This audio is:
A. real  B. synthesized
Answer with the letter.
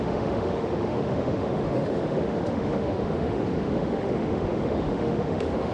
B